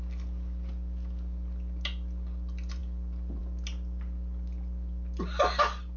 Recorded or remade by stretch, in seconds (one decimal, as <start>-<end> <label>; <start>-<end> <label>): 0.0-6.0 recorded